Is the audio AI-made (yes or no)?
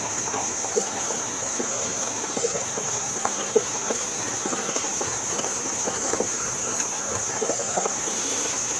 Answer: yes